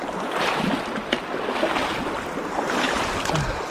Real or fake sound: real